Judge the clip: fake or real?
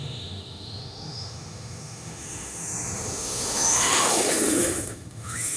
fake